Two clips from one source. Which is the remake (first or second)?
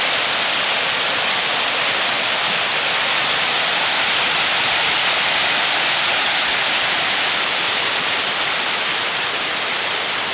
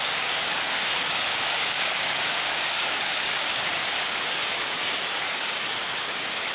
second